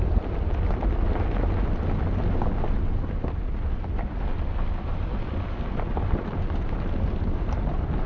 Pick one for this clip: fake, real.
real